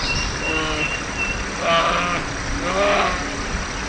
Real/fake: real